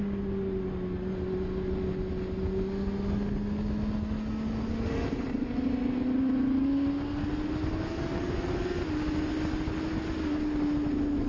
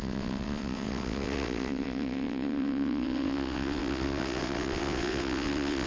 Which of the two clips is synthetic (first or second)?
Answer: second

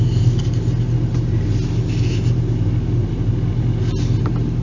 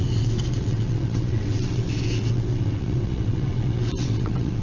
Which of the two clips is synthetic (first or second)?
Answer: second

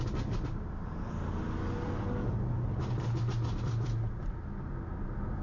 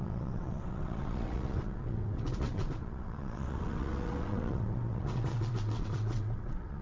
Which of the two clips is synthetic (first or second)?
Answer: second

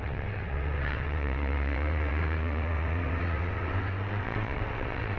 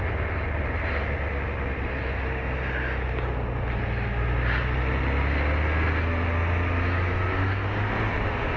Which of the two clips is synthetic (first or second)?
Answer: first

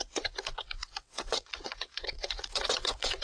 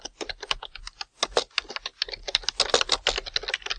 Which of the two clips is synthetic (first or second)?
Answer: first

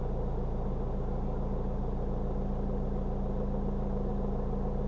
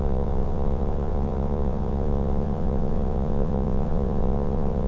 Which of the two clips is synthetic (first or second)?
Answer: second